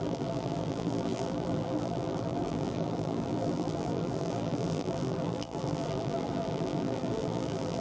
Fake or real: fake